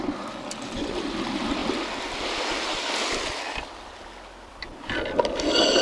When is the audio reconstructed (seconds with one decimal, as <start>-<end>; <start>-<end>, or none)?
none